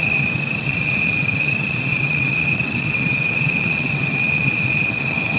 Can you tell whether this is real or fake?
fake